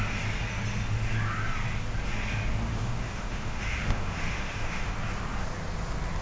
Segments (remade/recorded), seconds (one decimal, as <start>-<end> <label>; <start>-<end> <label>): 0.0-2.7 recorded; 2.7-4.9 remade; 4.9-6.2 recorded